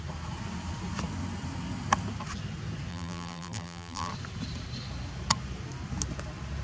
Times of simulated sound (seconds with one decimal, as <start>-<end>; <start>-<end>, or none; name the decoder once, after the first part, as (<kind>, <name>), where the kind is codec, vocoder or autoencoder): 2.9-4.1 (vocoder, BigVGAN v2)